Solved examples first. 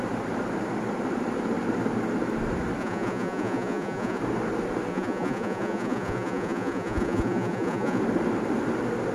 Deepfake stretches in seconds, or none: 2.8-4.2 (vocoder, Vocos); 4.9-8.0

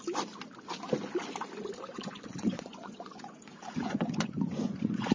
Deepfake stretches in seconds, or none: 1.9-5.1 (vocoder, Vocos)

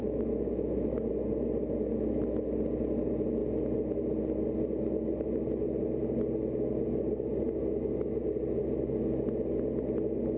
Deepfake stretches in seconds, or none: 0.0-1.1 (autoencoder, DAC-VAE)

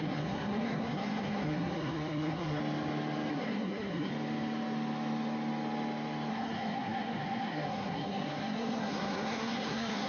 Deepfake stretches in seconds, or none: 0.0-2.6 (codec, SNAC); 3.3-4.1; 6.3-10.1

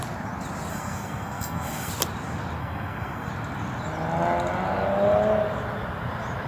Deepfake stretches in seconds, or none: 0.7-1.9 (codec, SNAC); 2.6-3.3